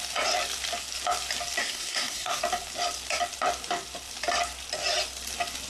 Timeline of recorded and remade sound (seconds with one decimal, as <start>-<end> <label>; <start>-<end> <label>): 0.0-1.6 recorded; 1.6-2.4 remade; 2.4-5.7 recorded